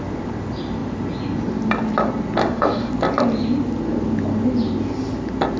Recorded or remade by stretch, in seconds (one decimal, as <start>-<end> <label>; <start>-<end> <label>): 0.0-2.4 recorded; 2.4-2.9 remade; 2.9-5.6 recorded

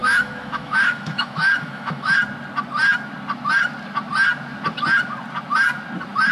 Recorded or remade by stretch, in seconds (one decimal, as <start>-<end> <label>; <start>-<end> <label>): 0.0-2.1 remade; 2.1-6.3 recorded

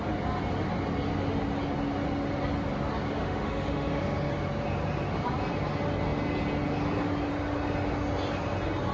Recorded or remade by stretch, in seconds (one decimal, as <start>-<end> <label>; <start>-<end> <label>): 0.0-3.2 recorded; 3.2-4.3 remade; 4.3-8.9 recorded

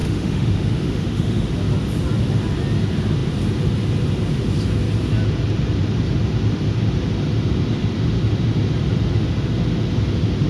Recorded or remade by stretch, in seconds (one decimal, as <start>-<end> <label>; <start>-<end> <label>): 0.0-1.5 remade; 1.5-10.5 recorded